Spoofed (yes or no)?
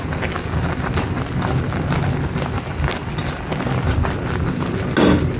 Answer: no